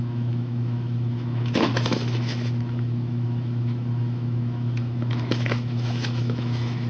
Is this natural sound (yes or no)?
no